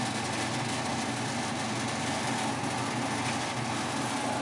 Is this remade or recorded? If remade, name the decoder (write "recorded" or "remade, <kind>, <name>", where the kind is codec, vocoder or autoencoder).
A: recorded